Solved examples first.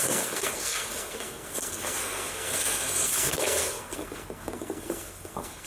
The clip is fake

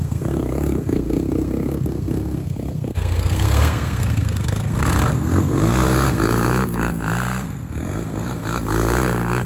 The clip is fake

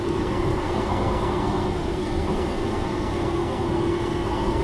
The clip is fake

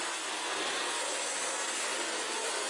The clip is real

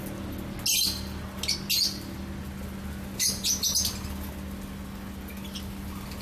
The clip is real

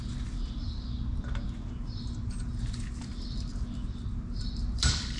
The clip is real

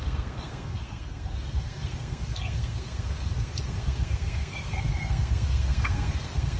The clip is fake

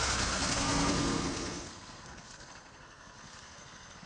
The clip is fake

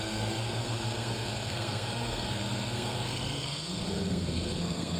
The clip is fake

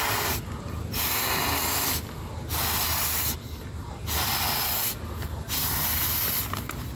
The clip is real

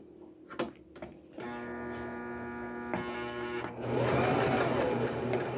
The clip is real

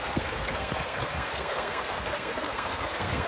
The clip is fake